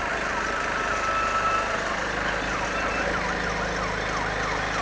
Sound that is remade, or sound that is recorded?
recorded